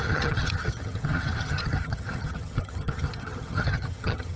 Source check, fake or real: fake